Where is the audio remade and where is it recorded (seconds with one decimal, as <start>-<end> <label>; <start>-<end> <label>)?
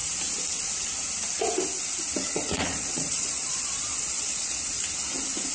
0.0-2.3 recorded; 2.3-4.8 remade; 4.8-5.5 recorded